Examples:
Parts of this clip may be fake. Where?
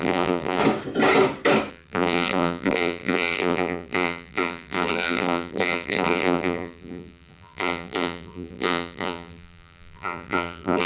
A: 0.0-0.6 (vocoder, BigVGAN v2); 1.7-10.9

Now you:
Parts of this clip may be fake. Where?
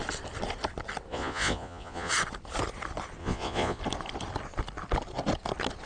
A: 1.1-2.1 (vocoder, Vocos); 3.2-3.8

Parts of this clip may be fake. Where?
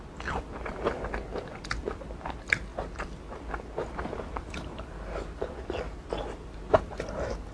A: none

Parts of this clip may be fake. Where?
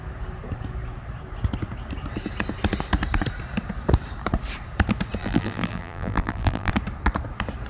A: 5.2-6.7 (vocoder, BigVGAN v2)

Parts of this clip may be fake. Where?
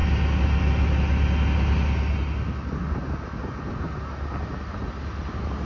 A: none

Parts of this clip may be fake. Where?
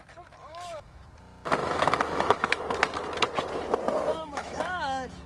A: 0.4-1.0 (autoencoder, DAC-VAE); 1.6-2.6; 4.1-5.3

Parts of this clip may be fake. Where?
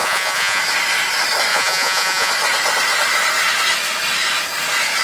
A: 0.0-0.6 (vocoder, Vocos); 1.5-2.3